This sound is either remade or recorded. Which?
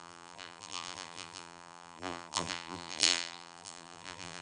remade